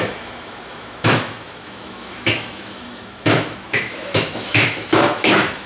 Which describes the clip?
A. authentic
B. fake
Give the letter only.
B